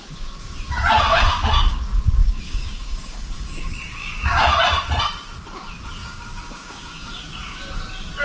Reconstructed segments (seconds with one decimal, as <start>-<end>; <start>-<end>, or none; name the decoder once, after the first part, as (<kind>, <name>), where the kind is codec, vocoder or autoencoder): 1.1-1.8 (codec, DAC); 2.2-4.5; 6.0-7.2